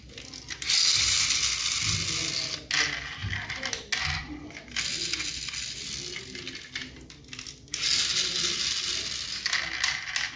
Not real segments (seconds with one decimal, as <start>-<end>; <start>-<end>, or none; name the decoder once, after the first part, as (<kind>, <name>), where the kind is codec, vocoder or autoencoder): none